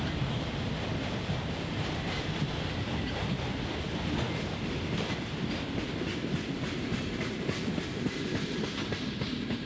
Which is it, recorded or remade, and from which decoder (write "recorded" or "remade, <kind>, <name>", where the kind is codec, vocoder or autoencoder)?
recorded